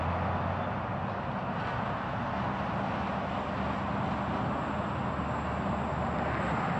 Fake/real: real